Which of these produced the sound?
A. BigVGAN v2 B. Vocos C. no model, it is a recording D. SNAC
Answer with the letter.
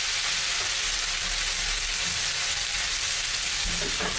C